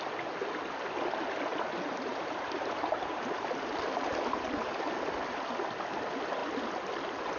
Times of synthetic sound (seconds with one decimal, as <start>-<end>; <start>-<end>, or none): 1.5-4.1